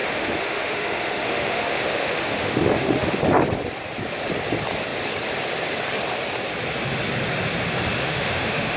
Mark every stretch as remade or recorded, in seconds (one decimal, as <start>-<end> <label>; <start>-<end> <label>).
0.0-3.2 remade; 3.2-8.0 recorded; 8.0-8.8 remade